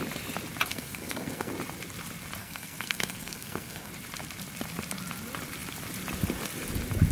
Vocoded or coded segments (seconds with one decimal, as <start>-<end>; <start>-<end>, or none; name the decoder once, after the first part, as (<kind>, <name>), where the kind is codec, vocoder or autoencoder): 0.7-1.5 (codec, SNAC); 2.4-3.9